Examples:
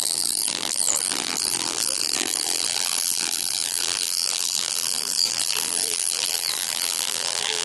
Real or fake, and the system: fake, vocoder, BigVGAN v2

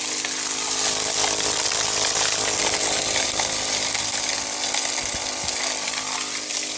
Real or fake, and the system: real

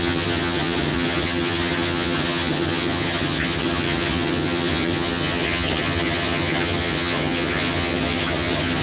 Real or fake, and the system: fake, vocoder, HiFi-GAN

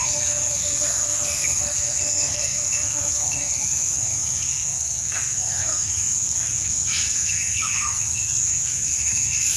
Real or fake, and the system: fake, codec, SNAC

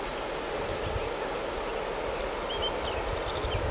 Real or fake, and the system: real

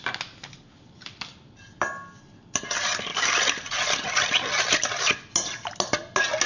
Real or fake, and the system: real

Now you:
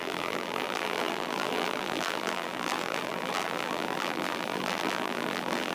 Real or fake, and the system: fake, vocoder, BigVGAN v2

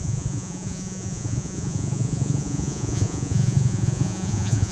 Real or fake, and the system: fake, vocoder, Vocos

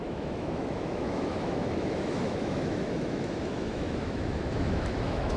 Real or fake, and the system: fake, autoencoder, DAC-VAE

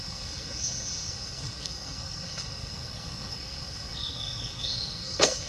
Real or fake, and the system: fake, codec, SNAC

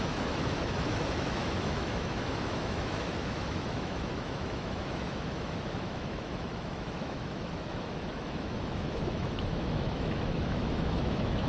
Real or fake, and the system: fake, autoencoder, DAC-VAE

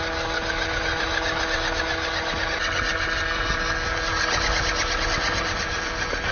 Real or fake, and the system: real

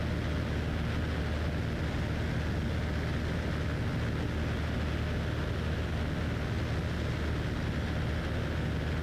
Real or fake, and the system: real